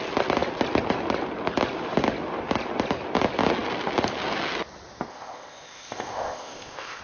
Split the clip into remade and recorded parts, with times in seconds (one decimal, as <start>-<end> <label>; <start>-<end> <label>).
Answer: 0.0-5.1 recorded; 5.1-7.0 remade